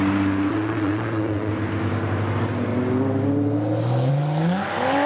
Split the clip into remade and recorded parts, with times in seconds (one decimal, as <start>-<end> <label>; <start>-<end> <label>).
0.0-0.5 recorded; 0.5-1.5 remade; 1.5-5.1 recorded